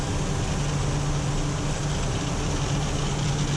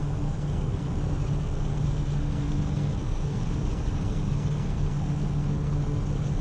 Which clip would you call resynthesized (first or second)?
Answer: second